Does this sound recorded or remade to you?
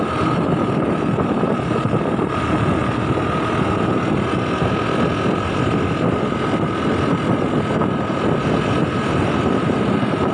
recorded